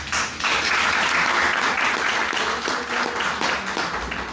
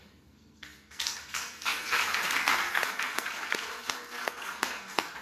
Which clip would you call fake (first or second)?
second